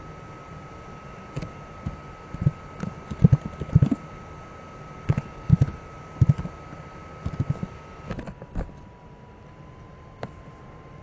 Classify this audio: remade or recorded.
recorded